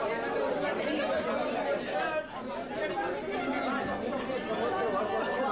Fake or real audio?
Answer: real